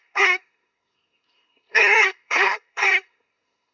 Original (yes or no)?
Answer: no